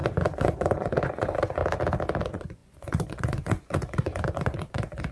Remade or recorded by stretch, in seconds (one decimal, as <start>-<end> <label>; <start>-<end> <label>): 0.0-1.6 remade; 1.6-2.2 recorded; 2.2-5.1 remade